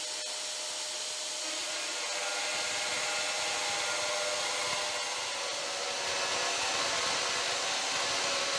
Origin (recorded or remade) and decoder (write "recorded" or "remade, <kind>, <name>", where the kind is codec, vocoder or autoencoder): recorded